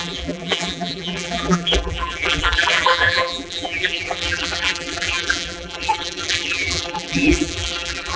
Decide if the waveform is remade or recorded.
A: remade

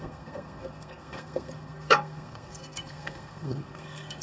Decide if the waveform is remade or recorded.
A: remade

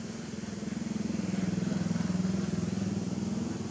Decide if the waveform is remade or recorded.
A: recorded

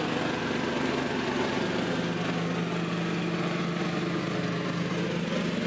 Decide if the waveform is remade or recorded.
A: recorded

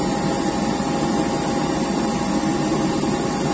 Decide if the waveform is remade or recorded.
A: recorded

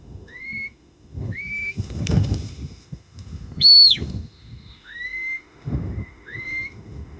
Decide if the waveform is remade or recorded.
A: remade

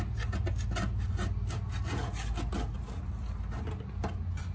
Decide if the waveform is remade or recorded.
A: recorded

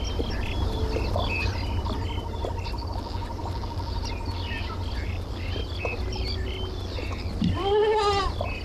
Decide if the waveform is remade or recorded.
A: recorded